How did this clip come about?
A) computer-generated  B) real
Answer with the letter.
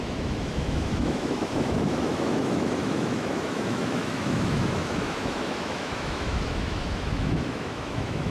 A